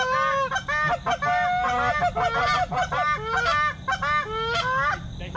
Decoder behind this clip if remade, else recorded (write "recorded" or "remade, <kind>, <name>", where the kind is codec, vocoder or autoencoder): recorded